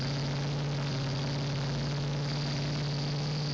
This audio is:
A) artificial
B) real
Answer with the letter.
B